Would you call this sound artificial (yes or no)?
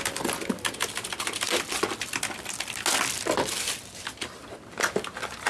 no